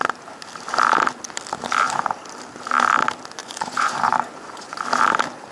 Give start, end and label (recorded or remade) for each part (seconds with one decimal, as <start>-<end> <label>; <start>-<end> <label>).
0.0-3.4 recorded; 3.4-4.8 remade; 4.8-5.5 recorded